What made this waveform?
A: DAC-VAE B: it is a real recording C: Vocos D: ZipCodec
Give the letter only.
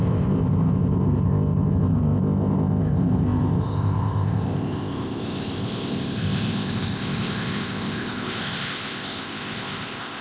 D